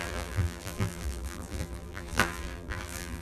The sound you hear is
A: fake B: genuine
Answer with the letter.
A